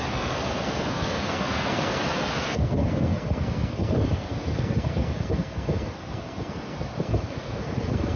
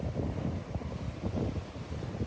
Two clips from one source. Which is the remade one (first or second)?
first